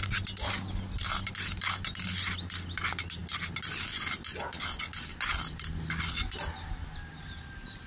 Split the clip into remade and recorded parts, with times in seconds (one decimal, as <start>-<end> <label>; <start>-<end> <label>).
0.0-7.9 recorded